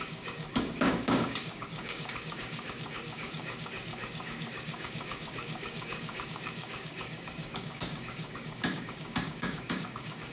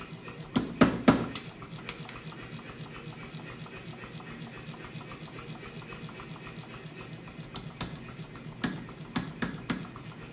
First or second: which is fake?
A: first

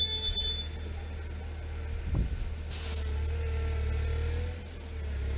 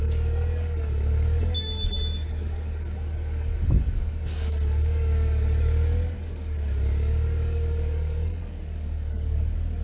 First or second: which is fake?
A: second